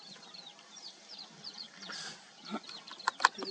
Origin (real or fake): real